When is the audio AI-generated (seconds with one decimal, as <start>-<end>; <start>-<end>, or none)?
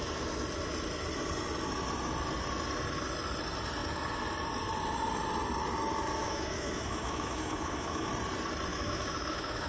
6.2-8.1; 8.7-9.7